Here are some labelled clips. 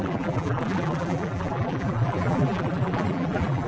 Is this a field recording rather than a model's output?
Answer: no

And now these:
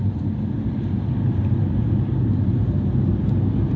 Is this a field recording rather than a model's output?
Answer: yes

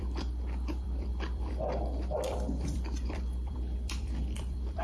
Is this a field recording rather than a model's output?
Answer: no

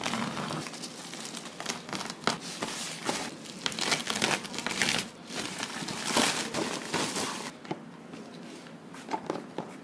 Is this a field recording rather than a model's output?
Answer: yes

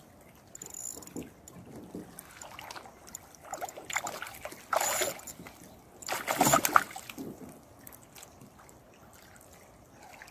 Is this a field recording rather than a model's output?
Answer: yes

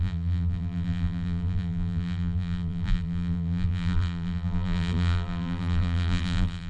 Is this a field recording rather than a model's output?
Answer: no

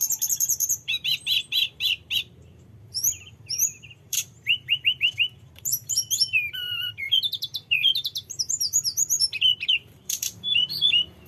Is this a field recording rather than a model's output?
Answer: no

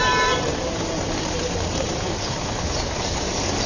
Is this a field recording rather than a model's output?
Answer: no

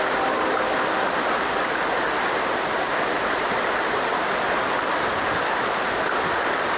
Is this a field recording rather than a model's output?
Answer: no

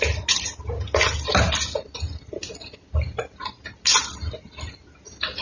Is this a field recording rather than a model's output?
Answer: yes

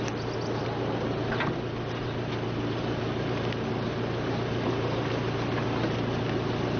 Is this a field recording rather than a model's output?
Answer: yes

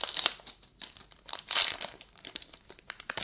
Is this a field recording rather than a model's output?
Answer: no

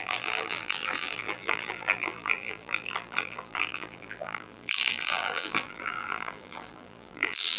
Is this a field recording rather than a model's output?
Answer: no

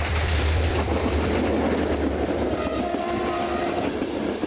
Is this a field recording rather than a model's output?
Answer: no